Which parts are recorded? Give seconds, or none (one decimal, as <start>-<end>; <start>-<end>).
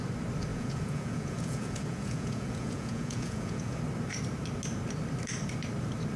0.0-0.5; 3.8-6.2